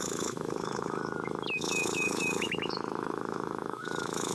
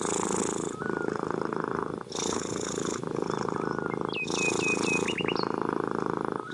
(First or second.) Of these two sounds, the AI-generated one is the first